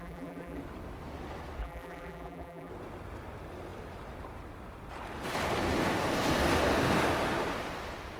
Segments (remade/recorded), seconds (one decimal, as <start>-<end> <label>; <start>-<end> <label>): 0.0-0.6 remade; 0.6-1.6 recorded; 1.6-2.7 remade; 2.7-8.2 recorded